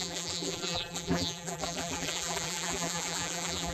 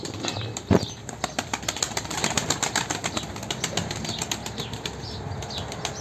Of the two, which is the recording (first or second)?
second